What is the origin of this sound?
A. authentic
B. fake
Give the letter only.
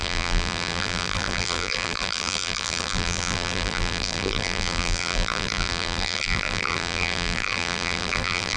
B